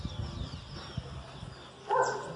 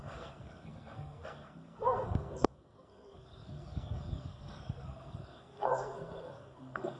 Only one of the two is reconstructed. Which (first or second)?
second